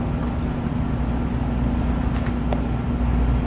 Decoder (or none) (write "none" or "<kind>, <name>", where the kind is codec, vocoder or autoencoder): none